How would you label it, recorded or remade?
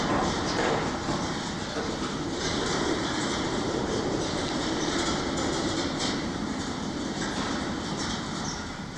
remade